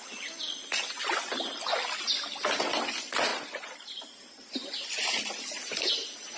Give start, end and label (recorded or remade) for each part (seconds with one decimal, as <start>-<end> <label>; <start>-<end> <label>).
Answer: 0.0-6.4 recorded